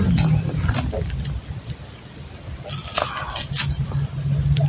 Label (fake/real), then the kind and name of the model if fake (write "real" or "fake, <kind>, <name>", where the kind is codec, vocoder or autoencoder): real